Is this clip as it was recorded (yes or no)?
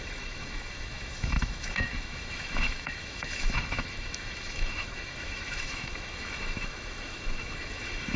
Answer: no